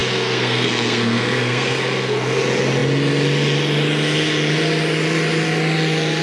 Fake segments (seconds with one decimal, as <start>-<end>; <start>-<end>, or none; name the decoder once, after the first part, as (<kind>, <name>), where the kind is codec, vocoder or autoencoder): 0.0-2.4 (codec, SNAC)